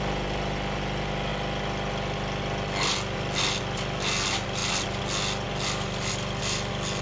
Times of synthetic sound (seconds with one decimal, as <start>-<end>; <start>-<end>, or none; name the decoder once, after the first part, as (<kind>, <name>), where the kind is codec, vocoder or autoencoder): none